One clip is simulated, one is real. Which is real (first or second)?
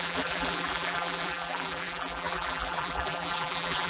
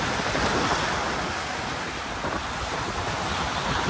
second